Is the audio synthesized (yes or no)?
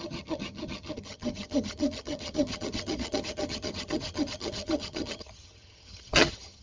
yes